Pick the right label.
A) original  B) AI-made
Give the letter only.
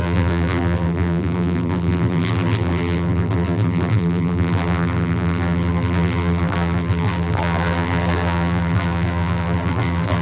B